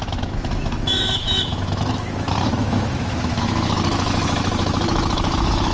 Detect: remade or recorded remade